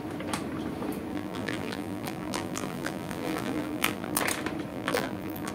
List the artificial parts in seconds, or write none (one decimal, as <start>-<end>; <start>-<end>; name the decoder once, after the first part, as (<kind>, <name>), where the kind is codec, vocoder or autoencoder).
1.1-4.2 (vocoder, BigVGAN v2); 4.7-5.5